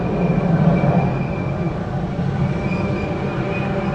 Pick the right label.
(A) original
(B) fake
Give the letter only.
A